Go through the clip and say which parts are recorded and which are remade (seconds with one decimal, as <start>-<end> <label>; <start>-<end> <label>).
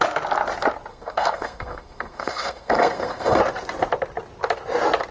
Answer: 0.0-0.9 recorded; 0.9-3.4 remade; 3.4-5.1 recorded